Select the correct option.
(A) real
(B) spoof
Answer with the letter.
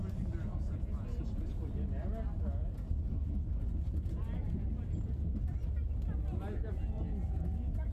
A